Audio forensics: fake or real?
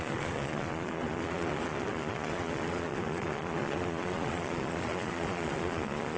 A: fake